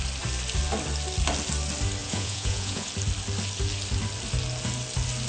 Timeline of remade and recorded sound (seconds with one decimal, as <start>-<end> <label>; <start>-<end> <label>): 0.0-2.0 recorded; 2.0-2.9 remade; 2.9-5.3 recorded